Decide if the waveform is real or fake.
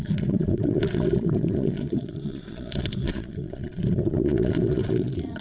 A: fake